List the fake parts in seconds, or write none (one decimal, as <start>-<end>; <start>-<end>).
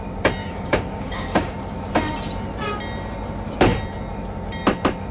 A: 0.4-1.6